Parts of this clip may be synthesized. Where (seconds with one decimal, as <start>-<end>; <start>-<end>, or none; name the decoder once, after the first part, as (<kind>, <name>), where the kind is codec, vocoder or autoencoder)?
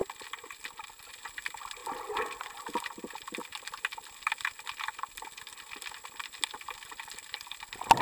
none